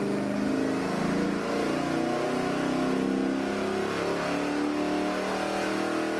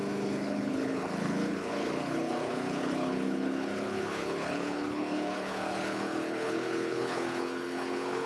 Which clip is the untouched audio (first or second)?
first